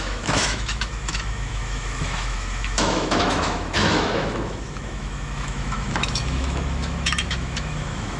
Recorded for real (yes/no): no